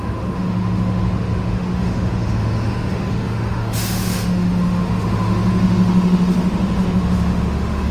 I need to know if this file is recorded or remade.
remade